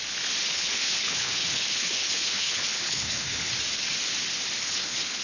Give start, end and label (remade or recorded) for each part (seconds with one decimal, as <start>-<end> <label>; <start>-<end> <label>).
0.0-0.4 recorded; 0.4-3.5 remade; 3.5-4.6 recorded; 4.6-5.2 remade